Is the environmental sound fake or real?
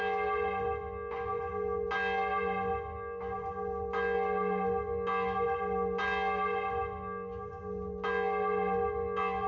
real